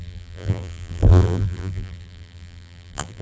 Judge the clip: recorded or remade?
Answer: remade